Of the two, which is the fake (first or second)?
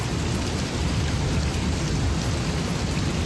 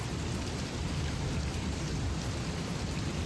second